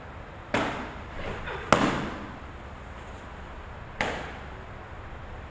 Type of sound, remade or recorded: recorded